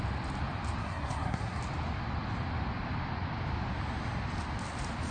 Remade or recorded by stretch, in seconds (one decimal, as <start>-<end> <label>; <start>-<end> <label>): 0.0-0.8 recorded; 0.8-1.6 remade; 1.6-5.1 recorded